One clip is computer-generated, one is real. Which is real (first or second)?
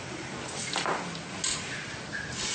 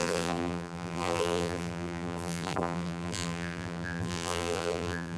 first